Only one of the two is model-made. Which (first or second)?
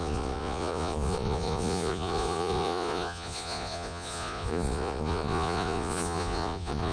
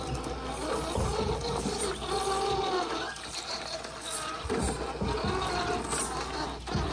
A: first